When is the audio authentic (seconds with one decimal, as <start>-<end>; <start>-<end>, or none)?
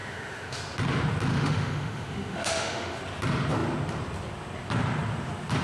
0.6-1.3; 3.0-5.6